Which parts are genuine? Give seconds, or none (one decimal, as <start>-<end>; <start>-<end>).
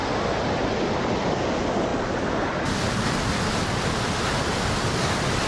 0.0-5.5